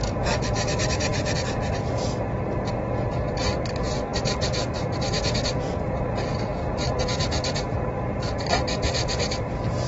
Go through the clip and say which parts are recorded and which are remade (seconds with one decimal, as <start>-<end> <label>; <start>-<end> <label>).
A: 0.0-6.5 remade; 6.5-7.2 recorded; 7.2-9.9 remade